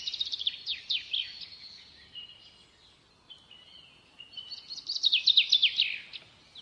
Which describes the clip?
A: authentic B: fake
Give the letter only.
A